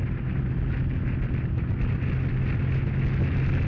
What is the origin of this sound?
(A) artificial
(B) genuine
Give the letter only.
B